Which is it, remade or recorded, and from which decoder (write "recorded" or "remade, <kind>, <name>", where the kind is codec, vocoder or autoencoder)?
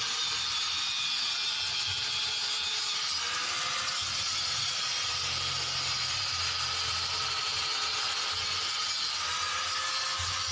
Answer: recorded